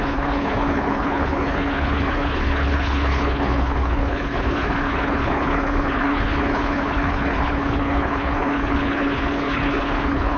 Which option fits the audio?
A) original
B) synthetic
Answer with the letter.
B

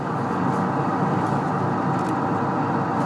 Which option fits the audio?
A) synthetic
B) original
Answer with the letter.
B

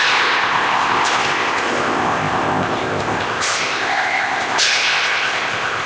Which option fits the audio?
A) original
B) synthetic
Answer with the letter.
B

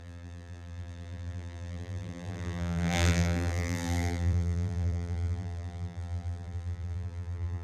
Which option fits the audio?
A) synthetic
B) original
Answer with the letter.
A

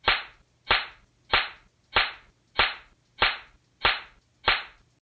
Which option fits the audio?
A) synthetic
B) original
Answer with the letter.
B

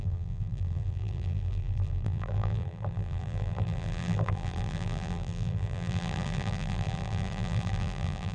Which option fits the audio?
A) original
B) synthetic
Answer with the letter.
B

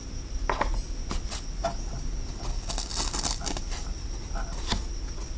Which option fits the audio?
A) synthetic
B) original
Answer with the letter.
B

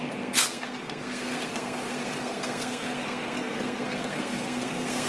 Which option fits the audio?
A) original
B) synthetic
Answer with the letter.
B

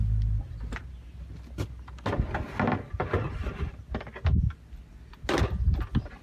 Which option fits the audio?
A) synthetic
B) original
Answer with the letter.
B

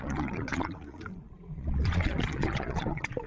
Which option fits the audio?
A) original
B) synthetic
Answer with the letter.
B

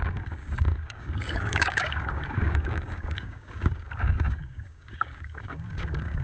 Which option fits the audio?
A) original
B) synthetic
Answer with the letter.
B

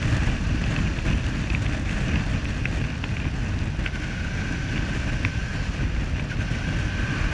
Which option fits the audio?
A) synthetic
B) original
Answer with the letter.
B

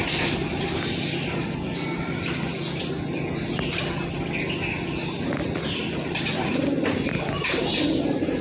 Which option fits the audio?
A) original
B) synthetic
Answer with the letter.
A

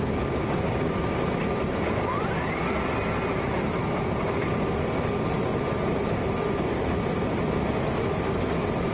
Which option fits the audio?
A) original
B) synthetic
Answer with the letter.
A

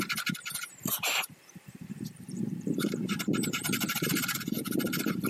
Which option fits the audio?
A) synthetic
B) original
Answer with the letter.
A